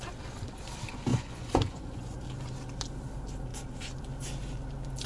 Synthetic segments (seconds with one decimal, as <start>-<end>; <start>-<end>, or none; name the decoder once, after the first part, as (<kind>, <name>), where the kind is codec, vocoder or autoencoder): 1.1-2.2 (vocoder, Vocos)